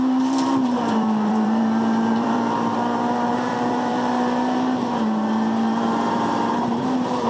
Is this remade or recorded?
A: remade